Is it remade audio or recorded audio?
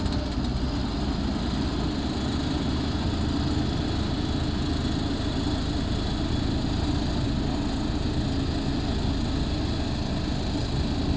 recorded